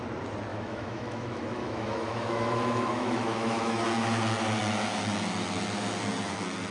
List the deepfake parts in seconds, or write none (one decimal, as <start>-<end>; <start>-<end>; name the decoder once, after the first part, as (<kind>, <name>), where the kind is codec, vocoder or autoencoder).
0.5-3.8 (autoencoder, DAC-VAE)